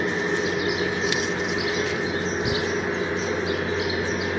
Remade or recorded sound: recorded